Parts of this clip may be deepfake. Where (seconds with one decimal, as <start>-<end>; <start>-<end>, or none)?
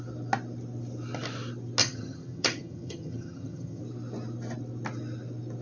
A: 1.8-3.8